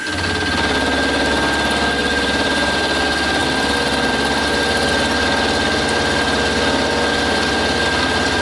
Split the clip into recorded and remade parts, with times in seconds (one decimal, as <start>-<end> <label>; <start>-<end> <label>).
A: 0.0-2.0 recorded; 2.0-2.8 remade; 2.8-8.4 recorded